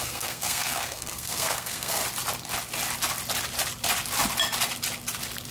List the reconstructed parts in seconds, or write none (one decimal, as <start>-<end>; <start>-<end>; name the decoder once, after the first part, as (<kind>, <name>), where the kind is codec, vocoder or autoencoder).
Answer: 0.0-2.0 (codec, SNAC)